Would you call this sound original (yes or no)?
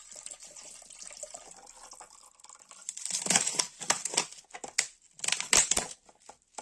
yes